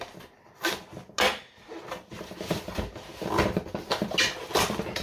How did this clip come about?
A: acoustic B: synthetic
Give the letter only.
A